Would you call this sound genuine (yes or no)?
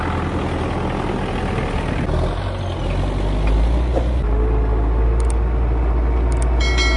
yes